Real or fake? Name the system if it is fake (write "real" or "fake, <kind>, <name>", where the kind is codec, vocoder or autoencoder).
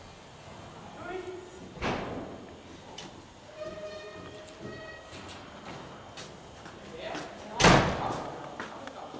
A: real